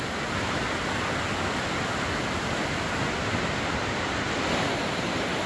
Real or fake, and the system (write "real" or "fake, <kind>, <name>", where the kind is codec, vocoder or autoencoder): real